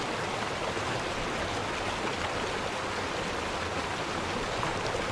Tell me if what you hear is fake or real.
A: real